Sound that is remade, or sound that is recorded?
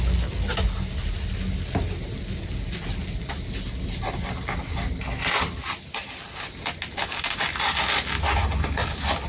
recorded